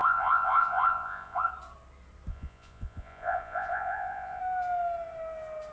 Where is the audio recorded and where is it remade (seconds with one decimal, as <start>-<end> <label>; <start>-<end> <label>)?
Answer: 0.0-1.5 remade; 1.5-2.3 recorded; 2.3-4.4 remade; 4.4-5.7 recorded